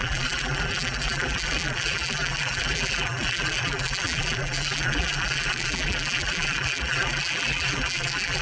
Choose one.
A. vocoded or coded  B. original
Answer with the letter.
A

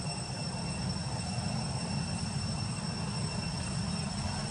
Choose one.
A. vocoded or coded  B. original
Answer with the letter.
B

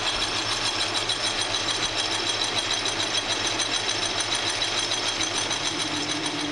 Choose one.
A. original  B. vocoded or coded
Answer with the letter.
A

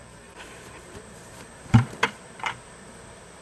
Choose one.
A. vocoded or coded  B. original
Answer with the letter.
A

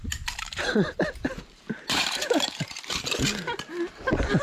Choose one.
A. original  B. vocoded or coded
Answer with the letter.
B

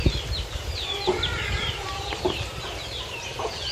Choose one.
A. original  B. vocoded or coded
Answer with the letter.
B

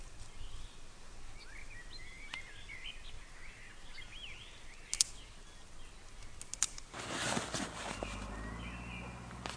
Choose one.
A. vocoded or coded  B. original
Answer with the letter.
B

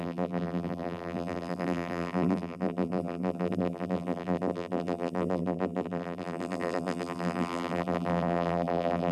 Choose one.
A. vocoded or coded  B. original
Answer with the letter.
A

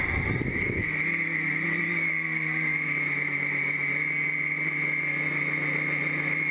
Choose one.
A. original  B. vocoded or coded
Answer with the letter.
A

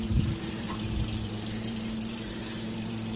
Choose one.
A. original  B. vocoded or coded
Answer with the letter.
B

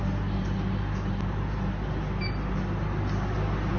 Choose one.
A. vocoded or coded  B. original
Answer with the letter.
B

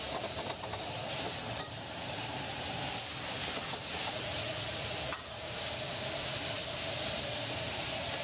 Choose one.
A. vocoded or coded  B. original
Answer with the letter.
A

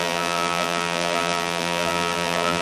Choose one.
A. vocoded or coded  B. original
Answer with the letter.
A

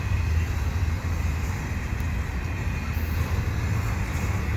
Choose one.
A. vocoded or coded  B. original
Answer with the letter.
B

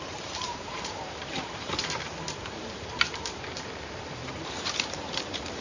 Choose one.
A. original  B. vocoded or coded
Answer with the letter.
B